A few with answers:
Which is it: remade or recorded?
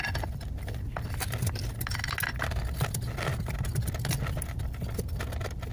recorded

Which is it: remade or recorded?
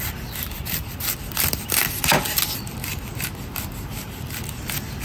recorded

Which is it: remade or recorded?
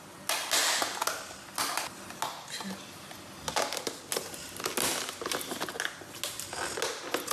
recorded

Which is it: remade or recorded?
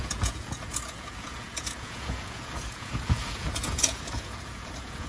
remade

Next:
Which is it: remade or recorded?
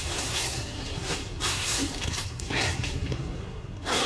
remade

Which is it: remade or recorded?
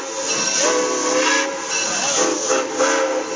recorded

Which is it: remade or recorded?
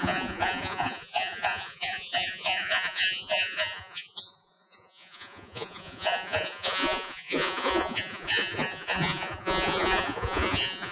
remade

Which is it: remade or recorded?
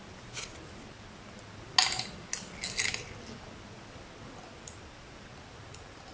recorded